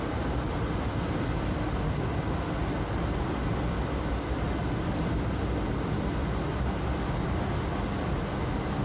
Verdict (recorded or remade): recorded